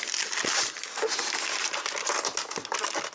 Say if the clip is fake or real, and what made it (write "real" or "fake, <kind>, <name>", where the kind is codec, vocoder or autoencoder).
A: real